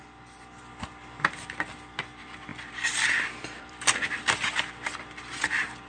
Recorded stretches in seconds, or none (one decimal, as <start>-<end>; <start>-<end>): none